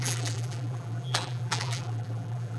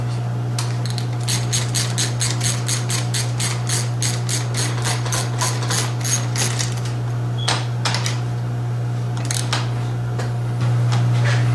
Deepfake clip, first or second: first